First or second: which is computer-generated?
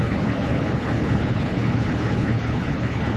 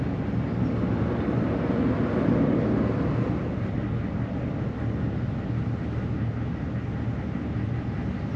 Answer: first